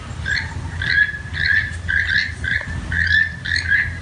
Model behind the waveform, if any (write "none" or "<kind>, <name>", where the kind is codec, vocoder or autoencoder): none